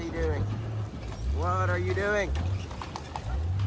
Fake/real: real